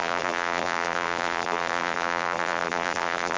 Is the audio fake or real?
fake